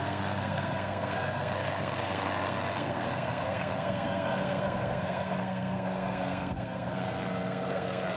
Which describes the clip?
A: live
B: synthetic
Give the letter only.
B